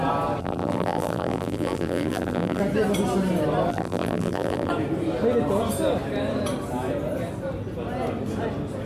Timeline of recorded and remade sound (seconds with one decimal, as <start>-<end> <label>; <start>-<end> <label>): 0.0-0.4 recorded; 0.4-2.6 remade; 2.6-3.7 recorded; 3.7-4.7 remade; 4.7-8.9 recorded